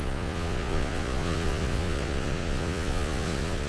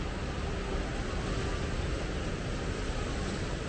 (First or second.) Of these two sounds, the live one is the second